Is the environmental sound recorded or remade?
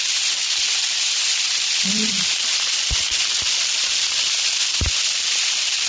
recorded